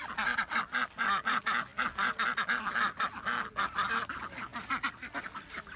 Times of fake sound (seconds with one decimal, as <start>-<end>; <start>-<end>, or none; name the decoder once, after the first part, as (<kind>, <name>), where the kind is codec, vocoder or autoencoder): none